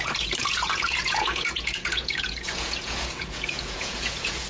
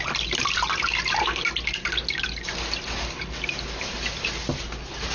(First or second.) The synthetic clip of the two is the first